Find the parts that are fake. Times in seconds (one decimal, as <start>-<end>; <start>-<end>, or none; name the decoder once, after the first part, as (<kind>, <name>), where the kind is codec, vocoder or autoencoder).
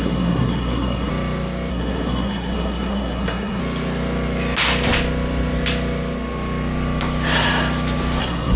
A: 0.0-1.1 (codec, SNAC); 1.7-3.6; 8.2-8.6